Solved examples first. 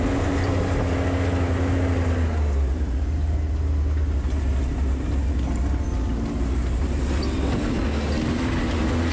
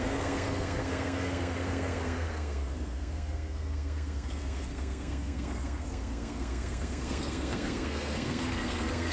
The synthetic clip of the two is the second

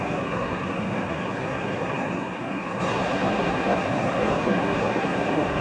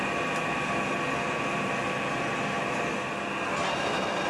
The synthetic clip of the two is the first